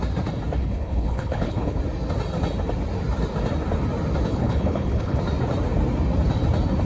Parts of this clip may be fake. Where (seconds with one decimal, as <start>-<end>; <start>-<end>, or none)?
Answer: 0.6-1.8; 4.3-5.2